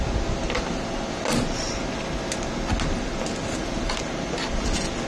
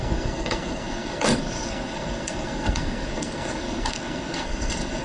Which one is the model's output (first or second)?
second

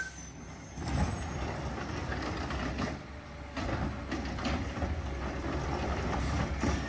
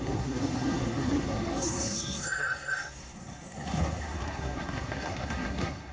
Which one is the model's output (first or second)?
second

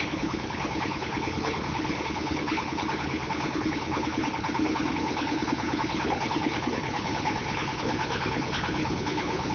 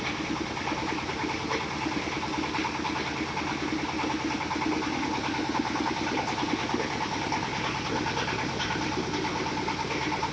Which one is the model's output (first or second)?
first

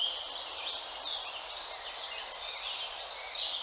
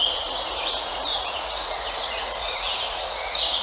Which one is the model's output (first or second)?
second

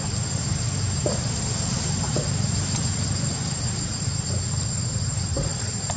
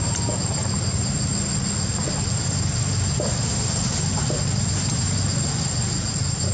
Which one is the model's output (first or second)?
first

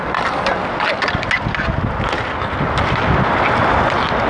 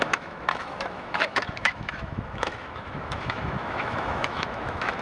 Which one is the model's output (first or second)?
second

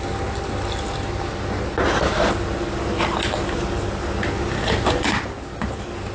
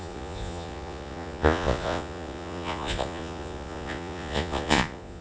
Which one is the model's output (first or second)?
second